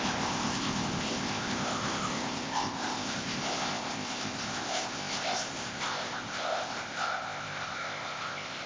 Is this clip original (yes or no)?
no